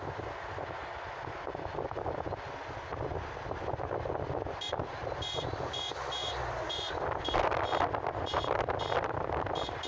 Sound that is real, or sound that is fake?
real